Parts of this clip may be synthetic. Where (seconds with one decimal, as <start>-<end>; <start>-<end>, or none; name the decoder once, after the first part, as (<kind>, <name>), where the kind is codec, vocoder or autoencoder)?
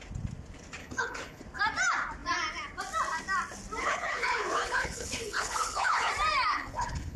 0.8-1.4 (codec, HILCodec); 3.8-6.1; 6.5-7.2